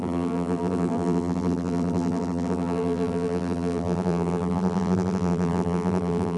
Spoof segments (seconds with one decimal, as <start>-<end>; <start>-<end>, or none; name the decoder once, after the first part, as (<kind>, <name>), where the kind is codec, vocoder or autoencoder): 0.0-6.4 (vocoder, BigVGAN v2)